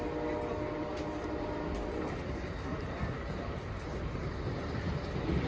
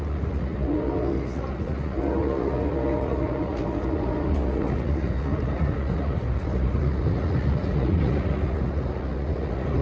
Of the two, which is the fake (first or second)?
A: second